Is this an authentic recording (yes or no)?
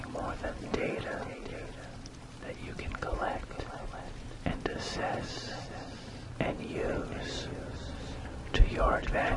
no